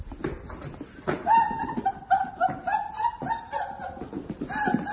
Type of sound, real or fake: real